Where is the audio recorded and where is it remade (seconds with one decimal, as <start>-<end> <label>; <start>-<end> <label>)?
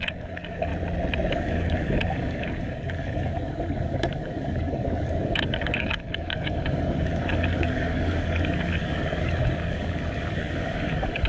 0.0-0.7 remade; 0.7-1.3 recorded; 1.3-11.3 remade